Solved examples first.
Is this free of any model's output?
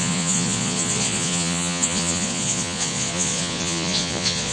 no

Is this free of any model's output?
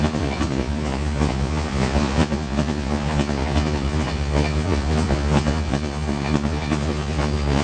no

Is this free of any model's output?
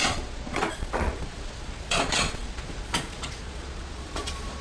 no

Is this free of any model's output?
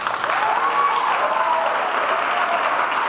yes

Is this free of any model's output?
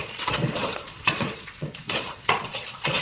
no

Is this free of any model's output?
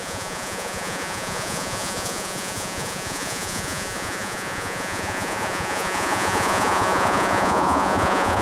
no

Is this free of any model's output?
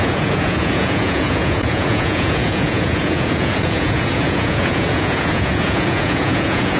no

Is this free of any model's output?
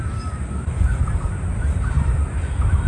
yes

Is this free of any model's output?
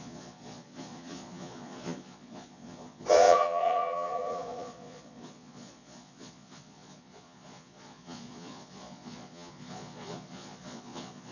no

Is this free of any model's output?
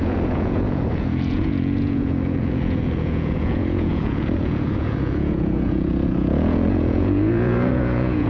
no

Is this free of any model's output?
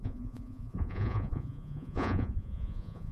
no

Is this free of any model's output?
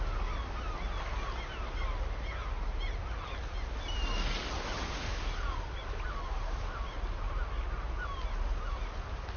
yes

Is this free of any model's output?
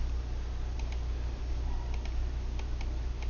yes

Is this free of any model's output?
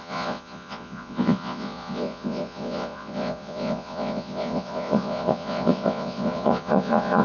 no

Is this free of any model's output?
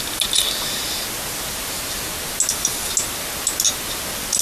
yes